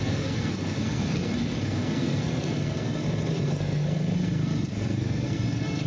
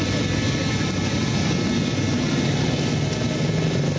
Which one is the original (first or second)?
second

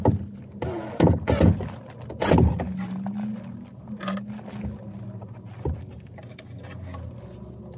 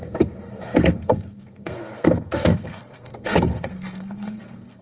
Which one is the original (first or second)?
first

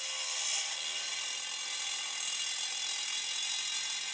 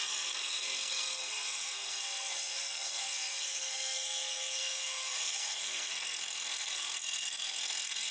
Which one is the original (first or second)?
first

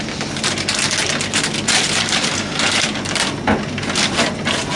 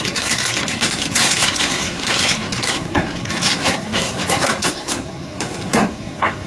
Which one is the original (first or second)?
first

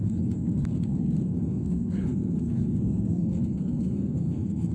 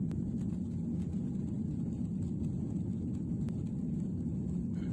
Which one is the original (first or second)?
second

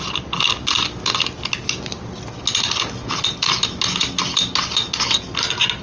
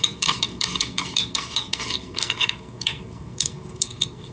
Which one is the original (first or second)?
first